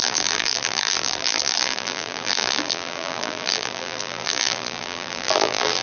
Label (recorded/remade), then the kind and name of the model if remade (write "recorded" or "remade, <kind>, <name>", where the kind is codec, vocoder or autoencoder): remade, vocoder, BigVGAN v2